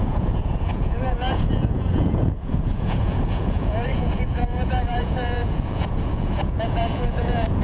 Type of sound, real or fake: fake